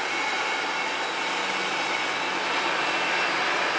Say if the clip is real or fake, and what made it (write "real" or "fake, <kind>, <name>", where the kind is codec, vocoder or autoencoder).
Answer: real